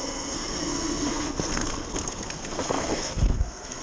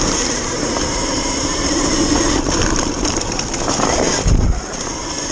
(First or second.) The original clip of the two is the second